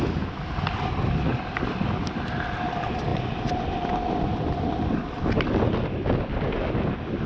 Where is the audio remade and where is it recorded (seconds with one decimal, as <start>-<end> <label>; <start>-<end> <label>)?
0.0-7.3 recorded